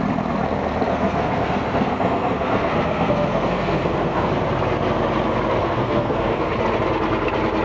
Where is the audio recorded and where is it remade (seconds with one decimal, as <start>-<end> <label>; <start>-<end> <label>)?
0.0-0.9 recorded; 0.9-4.3 remade; 4.3-5.6 recorded; 5.6-6.5 remade; 6.5-7.6 recorded